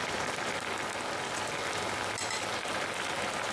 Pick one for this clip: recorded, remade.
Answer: recorded